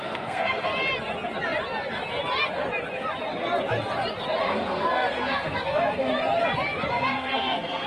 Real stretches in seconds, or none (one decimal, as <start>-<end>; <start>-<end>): 0.7-4.4; 6.1-6.9